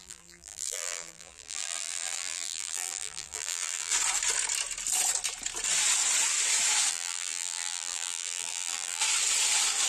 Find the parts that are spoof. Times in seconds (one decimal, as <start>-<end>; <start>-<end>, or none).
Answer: 0.0-3.9; 6.9-9.0